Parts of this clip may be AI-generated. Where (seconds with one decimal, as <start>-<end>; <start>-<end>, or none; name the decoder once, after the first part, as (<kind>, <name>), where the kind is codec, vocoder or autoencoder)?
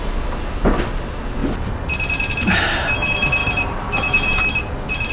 3.4-4.4 (vocoder, BigVGAN v2)